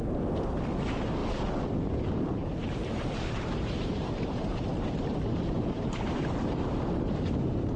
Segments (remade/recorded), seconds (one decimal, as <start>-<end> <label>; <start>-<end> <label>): 0.0-2.4 recorded; 2.4-6.7 remade; 6.7-7.8 recorded